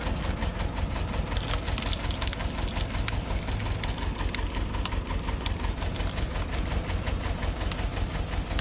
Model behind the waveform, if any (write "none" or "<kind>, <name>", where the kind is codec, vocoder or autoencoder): none